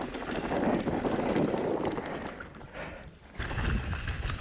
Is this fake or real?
real